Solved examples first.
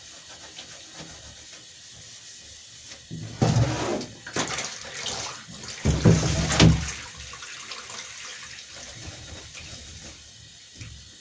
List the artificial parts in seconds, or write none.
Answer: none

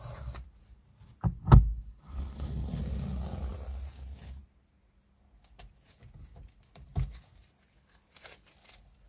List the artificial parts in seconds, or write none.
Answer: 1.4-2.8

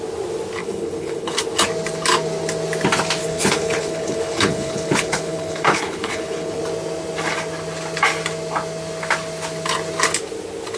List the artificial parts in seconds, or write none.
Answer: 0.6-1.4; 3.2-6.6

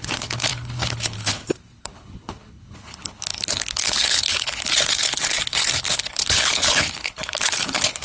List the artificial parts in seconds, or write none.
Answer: 0.0-8.0